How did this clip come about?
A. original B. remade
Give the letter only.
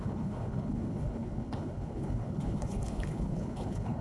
B